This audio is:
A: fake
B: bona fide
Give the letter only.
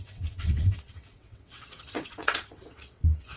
A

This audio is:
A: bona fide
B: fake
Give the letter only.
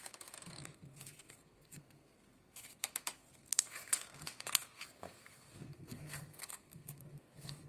B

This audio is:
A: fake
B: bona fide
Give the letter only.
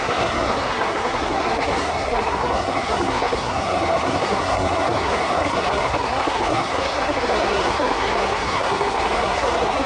A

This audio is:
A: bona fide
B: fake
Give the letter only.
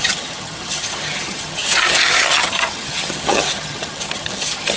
B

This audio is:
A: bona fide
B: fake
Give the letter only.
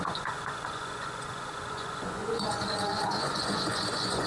B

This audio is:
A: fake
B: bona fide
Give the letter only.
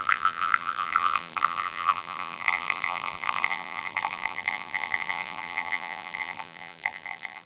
A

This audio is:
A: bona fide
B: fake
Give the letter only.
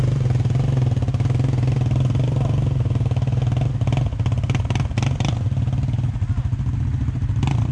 A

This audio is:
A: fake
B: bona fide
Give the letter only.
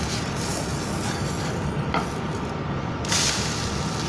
B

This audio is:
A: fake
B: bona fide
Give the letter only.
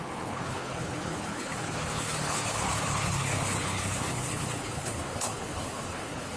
A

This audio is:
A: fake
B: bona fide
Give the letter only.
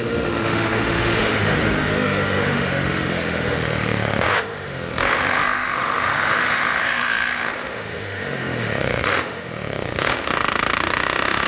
A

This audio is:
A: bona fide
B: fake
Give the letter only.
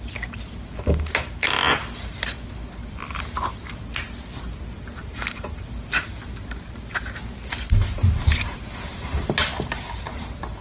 A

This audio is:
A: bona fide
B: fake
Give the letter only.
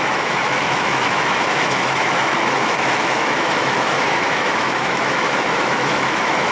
B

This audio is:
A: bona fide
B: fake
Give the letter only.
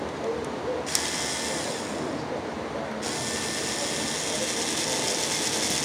A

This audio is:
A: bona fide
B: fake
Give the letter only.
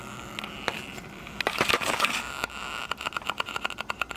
A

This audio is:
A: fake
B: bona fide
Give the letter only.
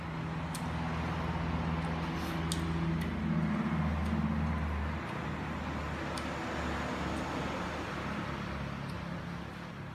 B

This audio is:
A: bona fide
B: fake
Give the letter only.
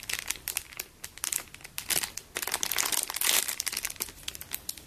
A